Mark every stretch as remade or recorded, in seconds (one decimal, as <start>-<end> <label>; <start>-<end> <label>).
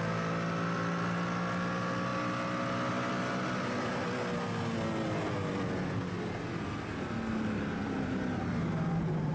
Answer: 0.0-9.3 recorded